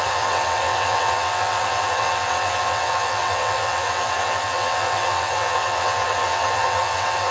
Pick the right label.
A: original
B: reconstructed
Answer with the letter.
B